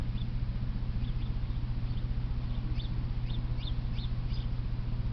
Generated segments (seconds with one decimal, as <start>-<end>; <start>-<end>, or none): none